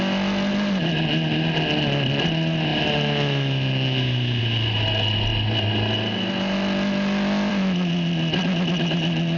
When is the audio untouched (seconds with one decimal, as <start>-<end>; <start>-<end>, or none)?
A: 0.0-9.4